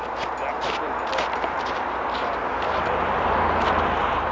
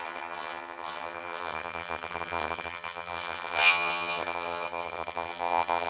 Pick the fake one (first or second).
second